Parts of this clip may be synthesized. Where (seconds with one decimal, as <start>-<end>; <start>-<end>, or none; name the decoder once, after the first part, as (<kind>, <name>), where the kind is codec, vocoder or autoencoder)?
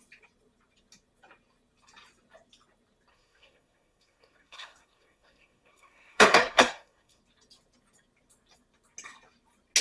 3.1-7.2 (codec, SNAC)